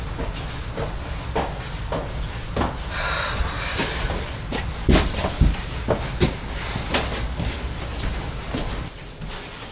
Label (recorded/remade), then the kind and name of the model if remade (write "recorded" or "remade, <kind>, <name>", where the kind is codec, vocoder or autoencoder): recorded